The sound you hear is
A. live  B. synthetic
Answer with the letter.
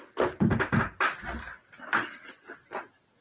A